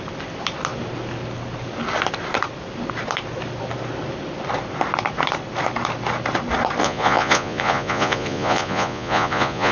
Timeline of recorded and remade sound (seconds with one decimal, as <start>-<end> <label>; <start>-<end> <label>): 0.0-6.8 recorded; 6.8-9.7 remade